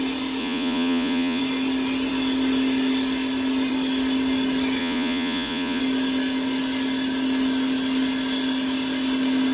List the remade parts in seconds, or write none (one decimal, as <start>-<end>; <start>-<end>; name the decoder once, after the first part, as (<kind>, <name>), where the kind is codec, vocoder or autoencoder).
0.4-1.4 (vocoder, Vocos); 4.8-5.8